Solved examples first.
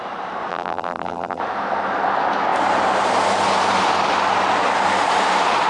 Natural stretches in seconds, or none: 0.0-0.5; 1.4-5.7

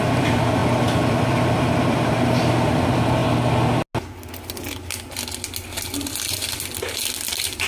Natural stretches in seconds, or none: 3.2-6.0